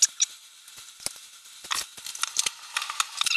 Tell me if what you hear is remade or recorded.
recorded